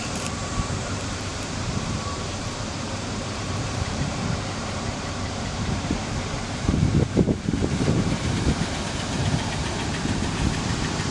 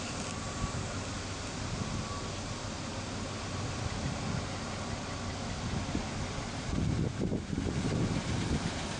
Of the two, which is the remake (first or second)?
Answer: first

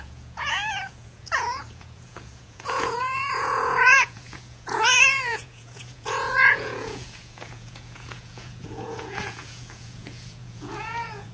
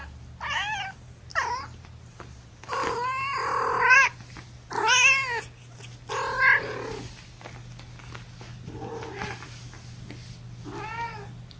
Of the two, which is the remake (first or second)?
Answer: first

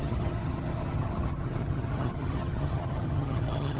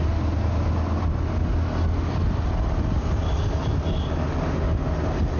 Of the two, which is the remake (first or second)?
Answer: first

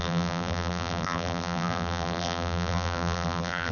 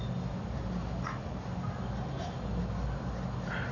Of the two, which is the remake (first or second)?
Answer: first